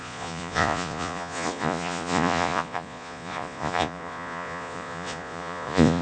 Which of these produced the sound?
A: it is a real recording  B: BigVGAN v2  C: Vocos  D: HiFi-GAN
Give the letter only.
C